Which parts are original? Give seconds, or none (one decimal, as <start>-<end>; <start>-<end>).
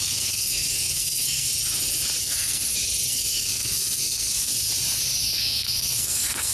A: 1.5-2.2; 2.6-3.1; 4.5-5.3